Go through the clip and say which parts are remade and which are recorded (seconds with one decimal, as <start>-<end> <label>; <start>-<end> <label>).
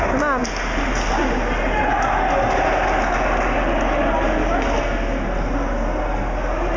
0.0-6.8 recorded